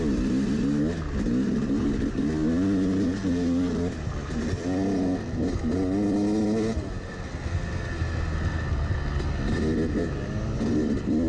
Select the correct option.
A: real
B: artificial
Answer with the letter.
A